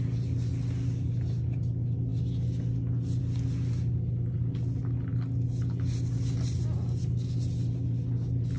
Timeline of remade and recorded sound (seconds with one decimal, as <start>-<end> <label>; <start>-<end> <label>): 0.0-8.6 recorded